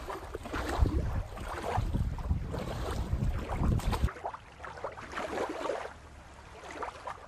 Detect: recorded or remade recorded